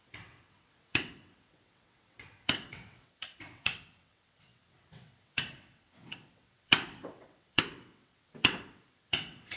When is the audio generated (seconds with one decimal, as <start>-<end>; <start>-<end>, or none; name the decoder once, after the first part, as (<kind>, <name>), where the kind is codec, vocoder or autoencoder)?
0.0-9.6 (vocoder, WaveNeXt)